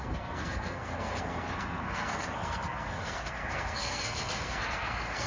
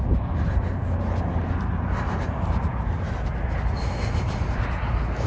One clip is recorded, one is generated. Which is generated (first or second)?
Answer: first